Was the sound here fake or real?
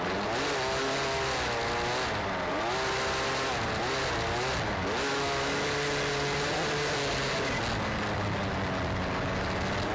real